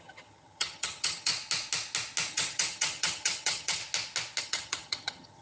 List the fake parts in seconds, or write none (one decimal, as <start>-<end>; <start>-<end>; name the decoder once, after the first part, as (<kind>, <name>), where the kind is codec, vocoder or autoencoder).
0.0-1.3 (vocoder, HiFi-GAN); 2.3-3.8; 4.4-5.4